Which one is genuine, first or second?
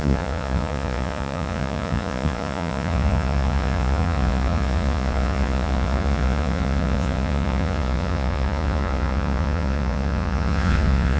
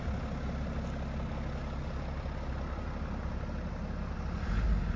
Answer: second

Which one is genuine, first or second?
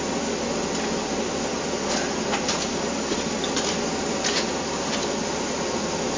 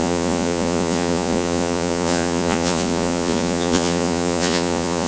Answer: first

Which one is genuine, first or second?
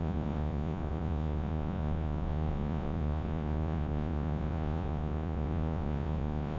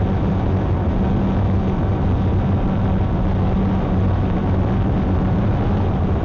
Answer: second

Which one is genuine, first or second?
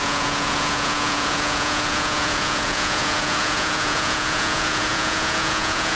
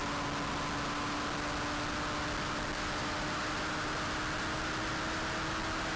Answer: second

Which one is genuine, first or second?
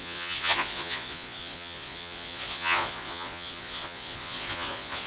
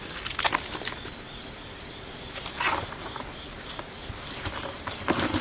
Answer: second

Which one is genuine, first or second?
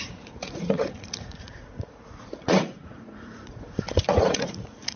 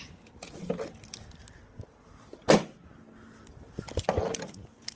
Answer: second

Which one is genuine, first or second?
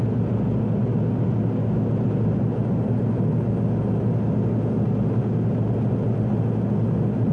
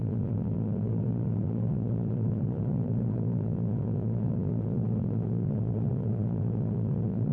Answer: first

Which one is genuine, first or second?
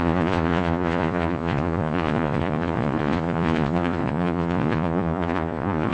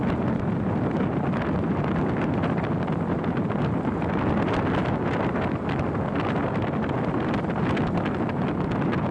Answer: second